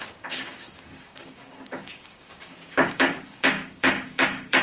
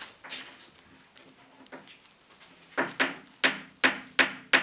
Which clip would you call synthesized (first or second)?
first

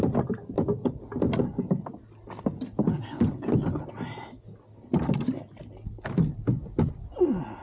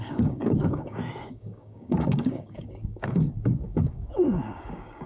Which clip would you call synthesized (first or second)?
second